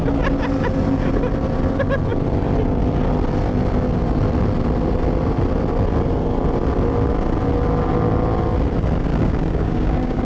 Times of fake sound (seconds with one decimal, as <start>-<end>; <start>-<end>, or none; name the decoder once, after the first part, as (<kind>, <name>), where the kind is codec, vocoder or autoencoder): 9.1-10.2 (codec, DAC)